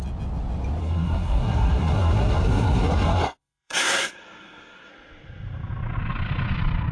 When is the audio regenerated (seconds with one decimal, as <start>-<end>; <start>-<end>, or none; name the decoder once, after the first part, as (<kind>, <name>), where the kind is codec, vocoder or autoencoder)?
0.8-4.9 (codec, SNAC)